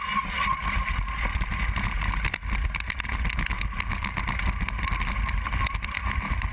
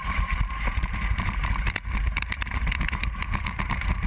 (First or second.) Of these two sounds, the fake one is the second